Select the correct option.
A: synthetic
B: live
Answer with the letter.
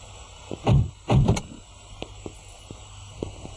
B